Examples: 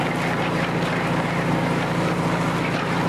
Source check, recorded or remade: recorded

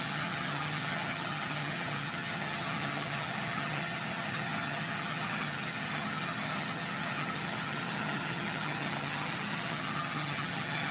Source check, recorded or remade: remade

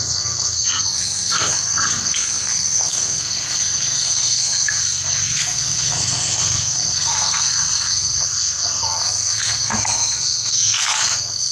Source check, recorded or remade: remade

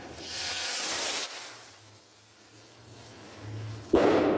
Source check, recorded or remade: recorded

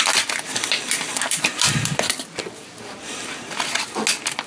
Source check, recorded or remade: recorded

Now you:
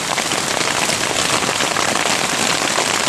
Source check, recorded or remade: recorded